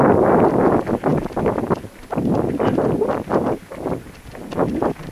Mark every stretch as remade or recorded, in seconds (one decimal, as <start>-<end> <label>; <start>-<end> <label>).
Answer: 0.0-5.1 recorded